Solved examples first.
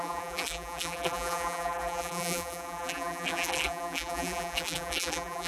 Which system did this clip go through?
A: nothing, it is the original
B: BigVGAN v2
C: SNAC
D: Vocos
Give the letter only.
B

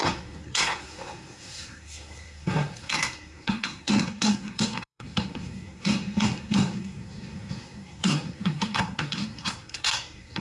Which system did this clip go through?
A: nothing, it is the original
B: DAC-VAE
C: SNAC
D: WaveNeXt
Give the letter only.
C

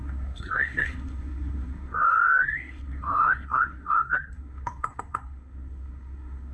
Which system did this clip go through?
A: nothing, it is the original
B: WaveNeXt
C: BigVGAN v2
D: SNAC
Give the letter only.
D